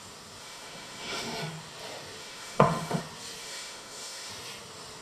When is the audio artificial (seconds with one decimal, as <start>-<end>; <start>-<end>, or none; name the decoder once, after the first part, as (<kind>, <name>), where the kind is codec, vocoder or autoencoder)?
0.4-1.4 (autoencoder, DAC-VAE); 2.2-3.0; 3.4-4.3